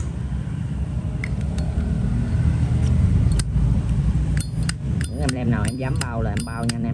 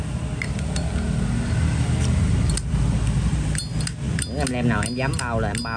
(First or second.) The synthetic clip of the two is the first